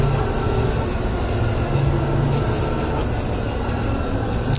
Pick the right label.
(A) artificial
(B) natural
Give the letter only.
B